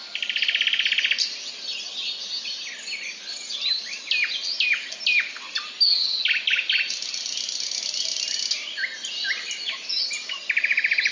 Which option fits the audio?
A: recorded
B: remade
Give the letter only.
A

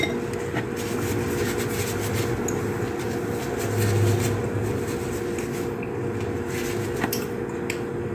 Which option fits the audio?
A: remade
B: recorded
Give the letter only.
B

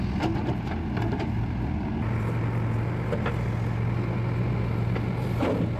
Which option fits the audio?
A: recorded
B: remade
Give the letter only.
A